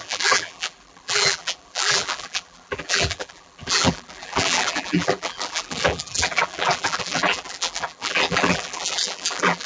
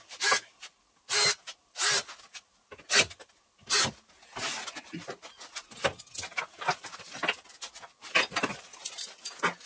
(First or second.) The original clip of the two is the second